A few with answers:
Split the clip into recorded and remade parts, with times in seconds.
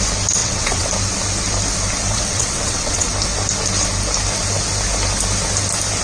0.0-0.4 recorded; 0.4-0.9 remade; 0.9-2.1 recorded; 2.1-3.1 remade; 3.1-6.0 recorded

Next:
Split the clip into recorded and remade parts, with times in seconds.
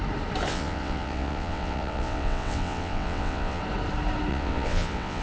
0.0-0.5 recorded; 0.5-3.6 remade; 3.6-4.3 recorded; 4.3-5.2 remade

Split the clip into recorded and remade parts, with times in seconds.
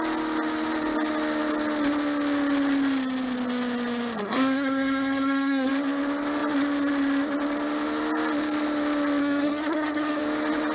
0.0-4.2 recorded; 4.2-5.7 remade; 5.7-9.2 recorded; 9.2-10.2 remade; 10.2-10.7 recorded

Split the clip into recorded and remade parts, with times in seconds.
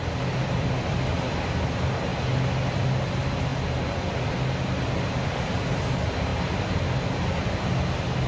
0.0-2.1 remade; 2.1-2.7 recorded; 2.7-3.5 remade; 3.5-4.8 recorded; 4.8-6.3 remade; 6.3-7.4 recorded; 7.4-8.3 remade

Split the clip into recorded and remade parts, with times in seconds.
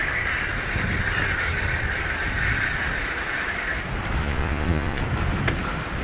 0.0-4.2 recorded; 4.2-5.0 remade; 5.0-6.0 recorded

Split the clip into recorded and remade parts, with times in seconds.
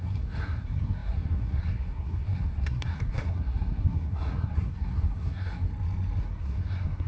0.0-5.7 remade; 5.7-6.2 recorded; 6.2-7.1 remade